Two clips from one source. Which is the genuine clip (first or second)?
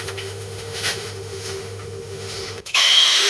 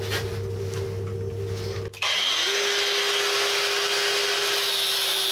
second